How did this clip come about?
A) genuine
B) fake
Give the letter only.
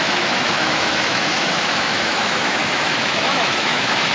B